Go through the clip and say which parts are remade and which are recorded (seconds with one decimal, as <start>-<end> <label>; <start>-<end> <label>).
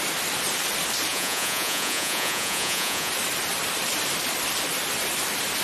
0.0-1.1 recorded; 1.1-3.1 remade; 3.1-5.6 recorded